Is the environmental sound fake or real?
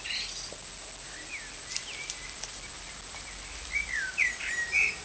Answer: real